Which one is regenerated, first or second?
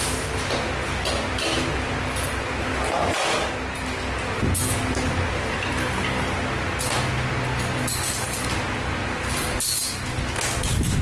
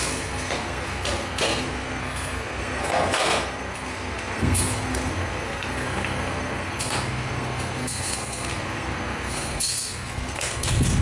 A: second